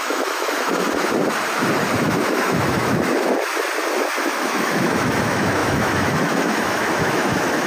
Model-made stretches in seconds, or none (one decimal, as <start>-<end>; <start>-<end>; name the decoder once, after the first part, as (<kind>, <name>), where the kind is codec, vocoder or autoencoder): 0.0-0.7 (autoencoder, DAC-VAE); 2.0-3.5; 4.2-7.7